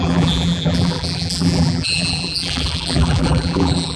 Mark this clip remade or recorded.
remade